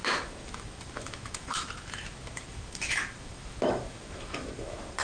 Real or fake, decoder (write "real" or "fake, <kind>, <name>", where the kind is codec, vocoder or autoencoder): fake, autoencoder, DAC-VAE